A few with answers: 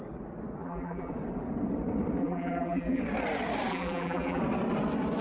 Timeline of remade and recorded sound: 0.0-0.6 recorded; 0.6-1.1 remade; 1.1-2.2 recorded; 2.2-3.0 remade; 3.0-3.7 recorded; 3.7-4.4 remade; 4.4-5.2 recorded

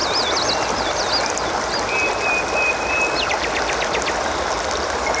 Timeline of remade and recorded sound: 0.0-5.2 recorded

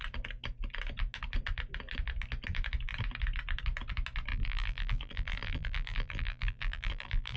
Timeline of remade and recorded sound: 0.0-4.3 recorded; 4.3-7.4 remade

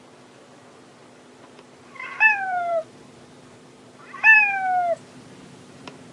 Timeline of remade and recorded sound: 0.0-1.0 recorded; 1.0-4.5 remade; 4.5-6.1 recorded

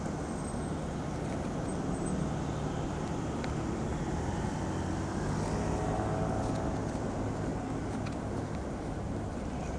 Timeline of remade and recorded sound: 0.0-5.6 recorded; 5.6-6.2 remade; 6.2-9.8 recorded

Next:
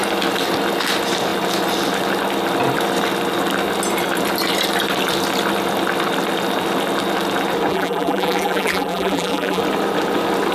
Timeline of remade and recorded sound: 0.0-7.7 recorded; 7.7-9.6 remade; 9.6-10.5 recorded